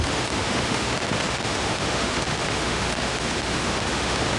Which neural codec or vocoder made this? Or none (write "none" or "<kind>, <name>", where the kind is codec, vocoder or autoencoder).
autoencoder, DAC-VAE